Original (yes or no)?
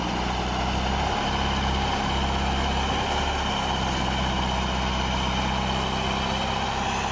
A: yes